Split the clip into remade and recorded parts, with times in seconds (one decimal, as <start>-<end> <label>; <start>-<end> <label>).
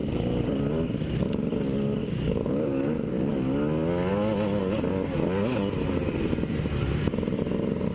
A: 0.0-0.5 remade; 0.5-2.0 recorded; 2.0-3.3 remade; 3.3-7.9 recorded